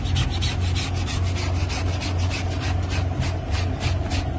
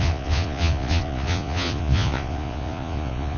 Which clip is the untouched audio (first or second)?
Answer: first